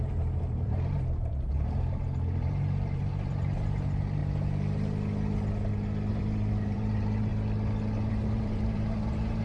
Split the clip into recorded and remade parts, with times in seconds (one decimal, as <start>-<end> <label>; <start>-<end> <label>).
0.0-4.2 remade; 4.2-6.1 recorded; 6.1-7.3 remade; 7.3-8.1 recorded; 8.1-9.4 remade